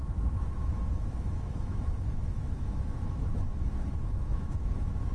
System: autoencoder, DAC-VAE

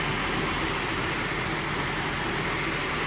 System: none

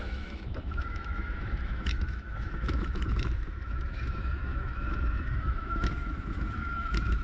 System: autoencoder, DAC-VAE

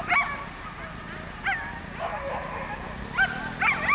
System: none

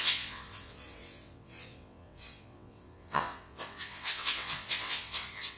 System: vocoder, WaveNeXt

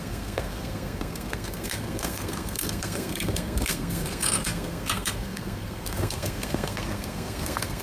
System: codec, SNAC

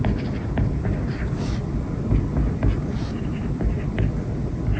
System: vocoder, BigVGAN v2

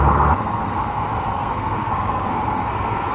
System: codec, SNAC